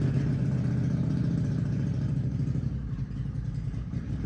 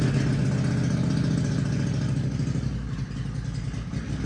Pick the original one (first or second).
second